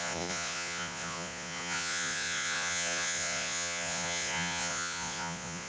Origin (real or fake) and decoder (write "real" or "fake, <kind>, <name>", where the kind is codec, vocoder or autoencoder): fake, vocoder, Vocos